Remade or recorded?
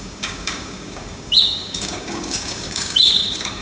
remade